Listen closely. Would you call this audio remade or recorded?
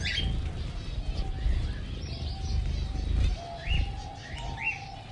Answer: recorded